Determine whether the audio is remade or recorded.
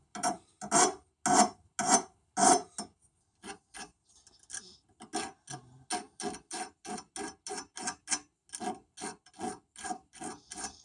recorded